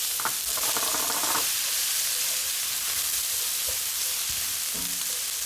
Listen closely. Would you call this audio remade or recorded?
remade